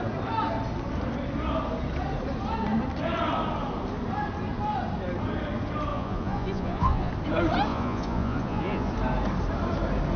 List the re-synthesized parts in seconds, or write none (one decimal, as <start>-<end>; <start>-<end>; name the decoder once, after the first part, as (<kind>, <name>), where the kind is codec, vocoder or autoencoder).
5.9-7.1 (vocoder, Vocos); 7.7-8.9